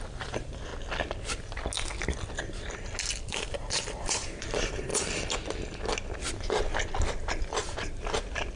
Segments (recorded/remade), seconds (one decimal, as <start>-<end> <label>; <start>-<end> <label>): 0.0-0.7 remade; 0.7-3.2 recorded; 3.2-4.9 remade; 4.9-7.3 recorded; 7.3-8.6 remade